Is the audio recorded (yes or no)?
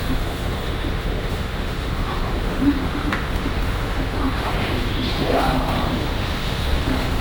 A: no